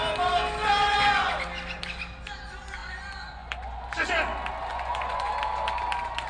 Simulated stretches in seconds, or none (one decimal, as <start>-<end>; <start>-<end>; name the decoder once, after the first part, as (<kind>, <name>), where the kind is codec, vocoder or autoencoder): 0.8-1.3 (vocoder, Vocos); 2.8-3.8; 4.7-5.3